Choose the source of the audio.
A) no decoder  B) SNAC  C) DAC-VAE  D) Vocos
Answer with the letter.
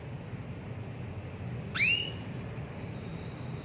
A